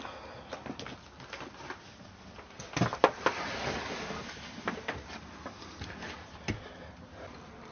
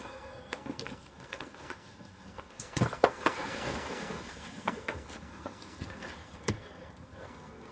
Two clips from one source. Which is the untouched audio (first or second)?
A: first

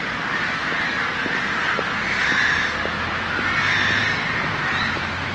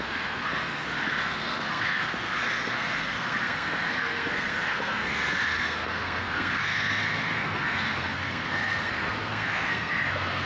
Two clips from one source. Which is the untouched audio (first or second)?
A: first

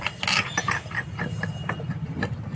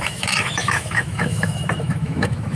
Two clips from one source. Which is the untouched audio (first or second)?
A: first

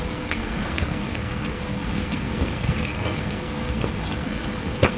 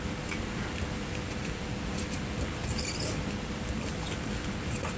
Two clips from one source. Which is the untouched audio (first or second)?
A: second